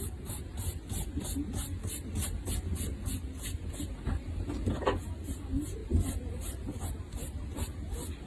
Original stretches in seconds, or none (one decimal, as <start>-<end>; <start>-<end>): 0.0-8.3

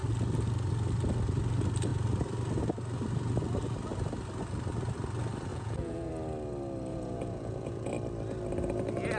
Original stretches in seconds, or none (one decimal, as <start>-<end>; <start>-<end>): 0.0-5.5; 6.1-6.9; 7.9-9.2